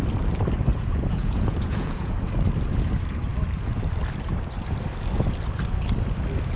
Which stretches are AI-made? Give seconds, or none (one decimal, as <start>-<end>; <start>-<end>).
0.7-2.1